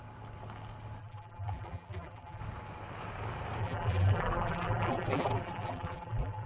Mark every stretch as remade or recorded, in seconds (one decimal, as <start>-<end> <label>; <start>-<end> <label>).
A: 0.0-1.0 recorded; 1.0-2.4 remade; 2.4-3.6 recorded; 3.6-6.5 remade